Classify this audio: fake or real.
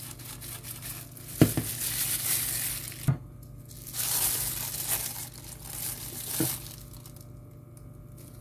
real